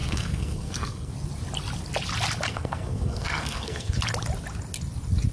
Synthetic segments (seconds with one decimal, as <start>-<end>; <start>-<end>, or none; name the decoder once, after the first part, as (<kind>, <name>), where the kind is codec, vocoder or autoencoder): 0.0-1.1 (codec, SNAC); 2.5-4.0